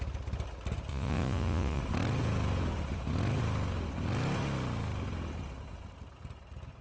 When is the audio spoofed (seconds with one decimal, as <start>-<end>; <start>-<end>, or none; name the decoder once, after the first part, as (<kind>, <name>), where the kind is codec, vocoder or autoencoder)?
0.9-1.8 (vocoder, Vocos)